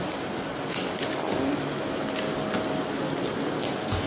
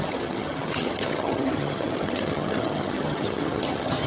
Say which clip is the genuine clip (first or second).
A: first